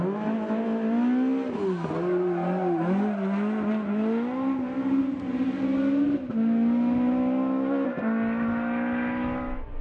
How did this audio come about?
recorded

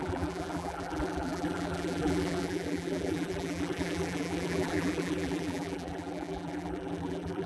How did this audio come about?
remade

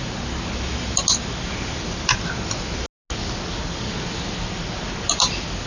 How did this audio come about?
recorded